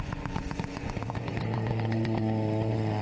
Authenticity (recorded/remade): remade